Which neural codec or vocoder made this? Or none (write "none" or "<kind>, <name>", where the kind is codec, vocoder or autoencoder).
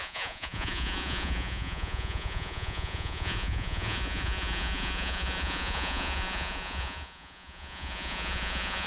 vocoder, Vocos